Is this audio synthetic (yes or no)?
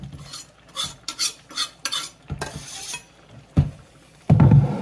no